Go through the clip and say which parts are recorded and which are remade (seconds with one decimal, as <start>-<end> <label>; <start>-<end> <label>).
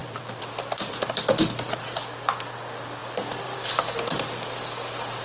0.0-1.3 remade; 1.3-3.0 recorded; 3.0-3.7 remade; 3.7-5.2 recorded